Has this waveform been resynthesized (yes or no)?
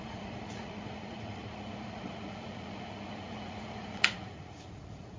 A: yes